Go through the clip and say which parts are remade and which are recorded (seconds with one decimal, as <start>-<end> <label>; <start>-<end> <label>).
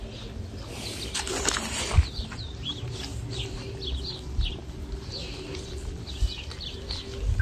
0.0-7.4 recorded